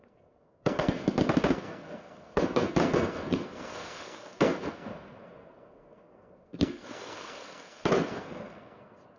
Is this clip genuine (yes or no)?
no